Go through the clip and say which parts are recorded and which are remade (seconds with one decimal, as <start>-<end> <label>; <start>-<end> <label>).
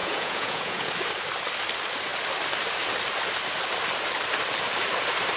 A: 0.0-0.9 remade; 0.9-5.4 recorded